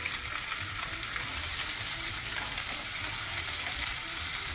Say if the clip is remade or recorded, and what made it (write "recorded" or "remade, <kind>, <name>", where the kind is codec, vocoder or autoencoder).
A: remade, vocoder, BigVGAN v2